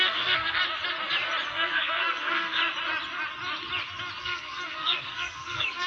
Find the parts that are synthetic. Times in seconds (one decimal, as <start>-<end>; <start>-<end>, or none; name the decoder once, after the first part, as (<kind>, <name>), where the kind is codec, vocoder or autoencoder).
0.0-0.6 (codec, SNAC); 1.5-2.6; 4.2-5.9

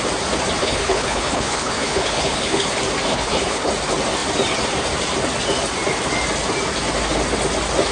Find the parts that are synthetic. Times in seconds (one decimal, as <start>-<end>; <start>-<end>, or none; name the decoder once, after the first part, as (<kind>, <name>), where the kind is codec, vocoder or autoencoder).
0.6-2.7 (codec, HILCodec); 3.1-3.7

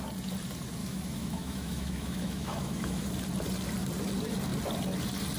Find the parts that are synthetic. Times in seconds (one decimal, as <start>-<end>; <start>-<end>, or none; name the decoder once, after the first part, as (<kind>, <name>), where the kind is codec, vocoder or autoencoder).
0.8-3.1 (autoencoder, DAC-VAE)

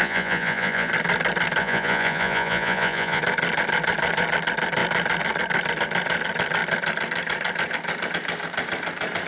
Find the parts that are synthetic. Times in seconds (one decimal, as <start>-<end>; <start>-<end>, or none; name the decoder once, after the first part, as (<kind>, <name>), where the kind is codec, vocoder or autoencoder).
0.0-0.9 (vocoder, Vocos); 1.6-3.2

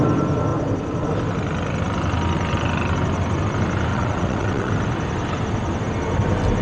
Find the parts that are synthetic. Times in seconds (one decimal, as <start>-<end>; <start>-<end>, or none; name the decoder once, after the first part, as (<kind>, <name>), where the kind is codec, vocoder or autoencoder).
3.9-4.7 (vocoder, WaveNeXt)